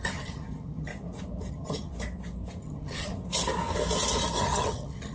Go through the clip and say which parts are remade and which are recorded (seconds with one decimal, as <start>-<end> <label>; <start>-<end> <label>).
0.0-0.9 remade; 0.9-1.5 recorded; 1.5-1.9 remade; 1.9-2.6 recorded; 2.6-3.1 remade; 3.1-4.4 recorded; 4.4-5.1 remade